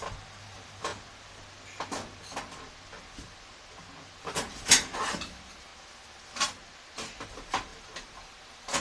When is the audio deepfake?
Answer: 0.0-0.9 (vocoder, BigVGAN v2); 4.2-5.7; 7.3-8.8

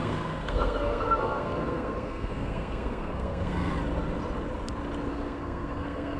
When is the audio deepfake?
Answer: 0.0-3.7 (codec, SNAC); 5.1-6.2

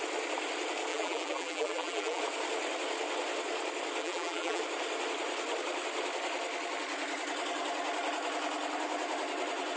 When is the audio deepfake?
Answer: 0.9-2.2 (vocoder, BigVGAN v2); 4.0-4.6

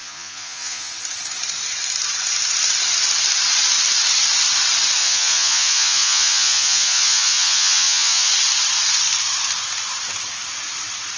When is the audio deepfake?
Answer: 0.0-0.9 (vocoder, Vocos); 5.0-8.3

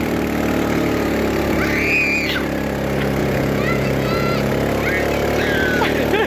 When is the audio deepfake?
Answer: 3.2-4.5 (vocoder, Vocos)

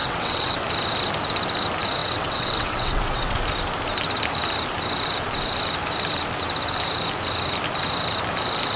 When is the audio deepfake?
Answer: 0.0-0.6 (vocoder, WaveNeXt); 2.0-3.4

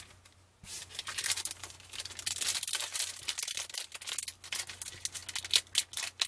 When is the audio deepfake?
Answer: 0.6-3.9 (vocoder, BigVGAN v2)

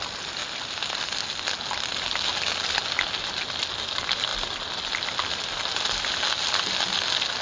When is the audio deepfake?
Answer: none